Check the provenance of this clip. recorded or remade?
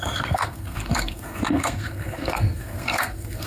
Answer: remade